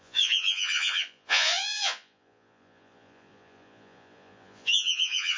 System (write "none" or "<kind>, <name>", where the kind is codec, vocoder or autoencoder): vocoder, Vocos